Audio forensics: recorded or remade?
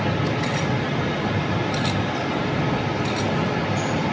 recorded